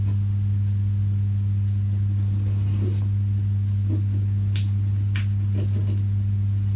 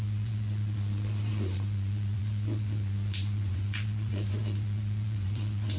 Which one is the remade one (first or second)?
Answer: second